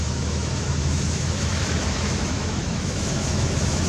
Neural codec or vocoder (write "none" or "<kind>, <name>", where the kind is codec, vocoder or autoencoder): autoencoder, DAC-VAE